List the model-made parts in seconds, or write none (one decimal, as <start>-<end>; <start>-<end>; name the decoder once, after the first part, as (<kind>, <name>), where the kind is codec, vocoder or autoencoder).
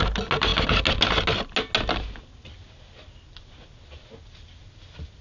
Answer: none